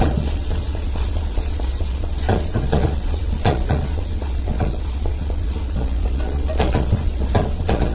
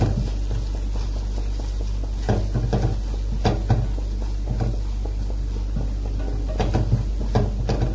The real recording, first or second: second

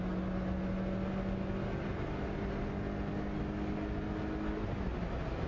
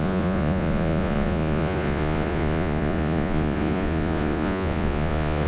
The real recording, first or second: first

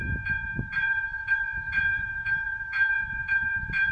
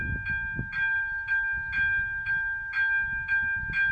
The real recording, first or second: second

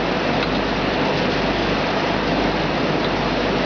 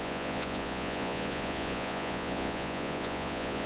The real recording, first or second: first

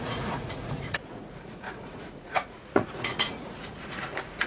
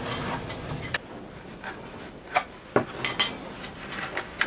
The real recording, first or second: second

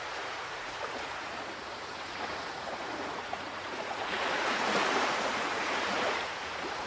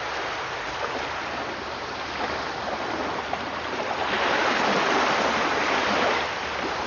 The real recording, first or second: second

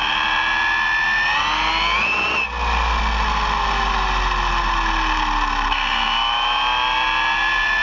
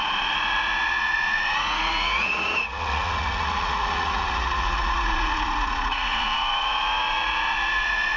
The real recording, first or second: first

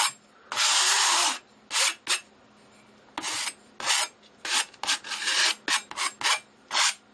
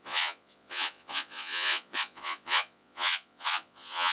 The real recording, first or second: first